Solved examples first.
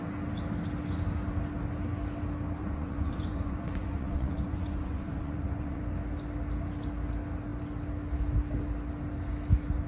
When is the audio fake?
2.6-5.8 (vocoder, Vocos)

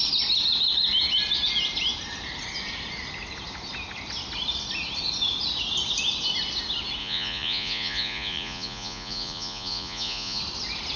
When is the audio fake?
7.0-10.4 (vocoder, Vocos)

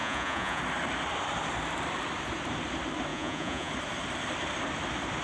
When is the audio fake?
0.0-0.6 (vocoder, Vocos); 3.1-3.7